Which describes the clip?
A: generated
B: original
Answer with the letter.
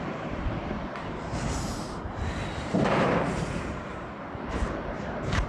A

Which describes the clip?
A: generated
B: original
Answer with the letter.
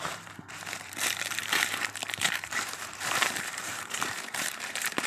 A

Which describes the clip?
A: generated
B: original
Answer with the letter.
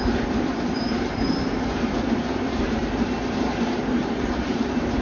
A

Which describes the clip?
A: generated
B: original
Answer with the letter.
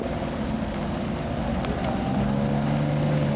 B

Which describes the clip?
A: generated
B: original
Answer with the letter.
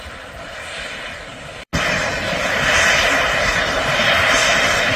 A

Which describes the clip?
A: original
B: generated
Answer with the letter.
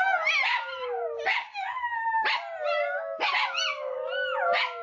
A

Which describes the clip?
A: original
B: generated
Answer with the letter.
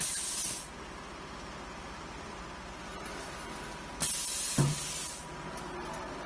A